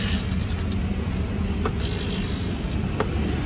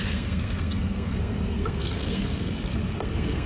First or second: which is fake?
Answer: second